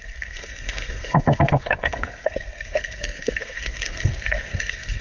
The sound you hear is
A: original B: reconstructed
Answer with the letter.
B